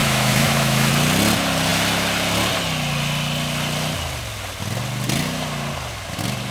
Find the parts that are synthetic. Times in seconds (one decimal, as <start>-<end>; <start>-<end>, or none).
0.0-0.9

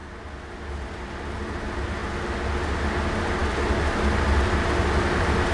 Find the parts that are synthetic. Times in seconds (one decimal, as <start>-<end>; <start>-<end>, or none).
none

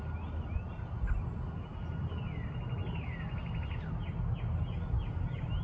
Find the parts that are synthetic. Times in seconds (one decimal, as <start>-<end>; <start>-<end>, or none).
none

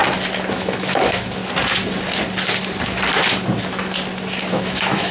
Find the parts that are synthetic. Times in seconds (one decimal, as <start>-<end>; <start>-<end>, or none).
0.5-1.4; 4.5-5.1

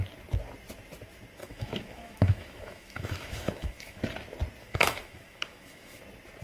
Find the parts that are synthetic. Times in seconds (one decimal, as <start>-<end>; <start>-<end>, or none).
1.4-4.0; 4.6-6.0

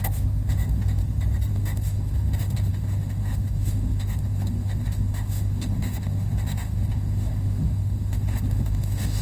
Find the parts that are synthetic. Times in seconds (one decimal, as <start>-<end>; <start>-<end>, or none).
0.0-1.0; 1.5-9.2